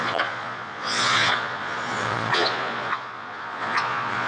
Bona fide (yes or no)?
no